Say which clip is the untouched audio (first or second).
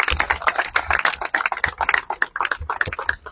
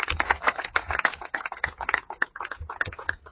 first